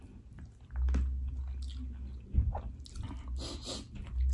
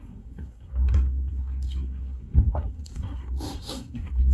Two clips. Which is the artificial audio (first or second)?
second